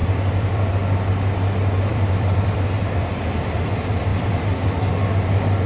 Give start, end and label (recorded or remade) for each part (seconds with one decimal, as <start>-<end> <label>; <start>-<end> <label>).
0.0-0.7 remade; 0.7-1.9 recorded; 1.9-3.6 remade; 3.6-5.7 recorded